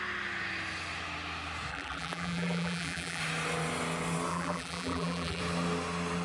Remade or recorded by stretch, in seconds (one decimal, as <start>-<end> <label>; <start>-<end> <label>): 0.0-1.7 recorded; 1.7-3.2 remade; 3.2-4.3 recorded; 4.3-5.4 remade; 5.4-6.2 recorded